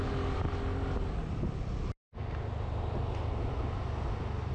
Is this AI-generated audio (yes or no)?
no